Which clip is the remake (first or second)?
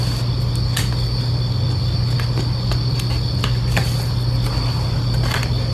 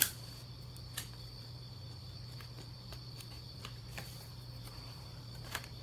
second